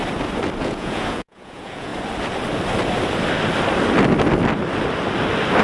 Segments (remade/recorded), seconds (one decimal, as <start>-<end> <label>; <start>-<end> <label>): 0.0-0.6 recorded; 0.6-1.9 remade; 1.9-5.6 recorded